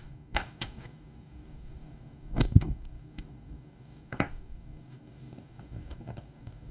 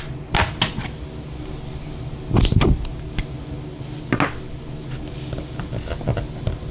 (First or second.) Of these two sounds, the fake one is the first